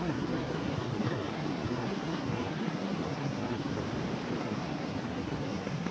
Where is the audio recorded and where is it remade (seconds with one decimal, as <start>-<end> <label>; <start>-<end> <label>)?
0.0-3.8 remade; 3.8-4.4 recorded; 4.4-5.9 remade